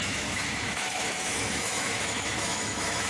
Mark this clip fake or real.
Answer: fake